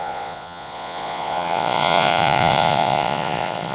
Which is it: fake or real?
fake